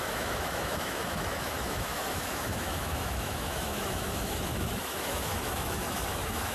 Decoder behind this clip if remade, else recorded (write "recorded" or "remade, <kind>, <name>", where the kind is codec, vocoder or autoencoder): remade, autoencoder, DAC-VAE